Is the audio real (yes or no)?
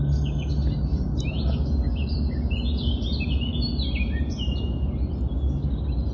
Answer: yes